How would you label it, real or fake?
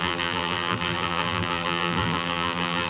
fake